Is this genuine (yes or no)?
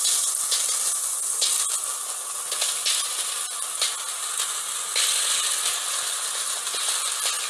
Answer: yes